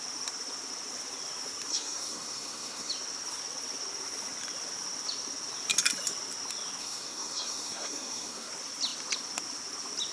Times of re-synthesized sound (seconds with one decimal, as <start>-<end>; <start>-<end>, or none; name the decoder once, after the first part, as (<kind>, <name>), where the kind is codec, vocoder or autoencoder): 1.7-2.9 (codec, SNAC); 6.8-8.5